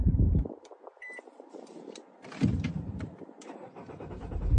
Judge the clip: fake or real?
fake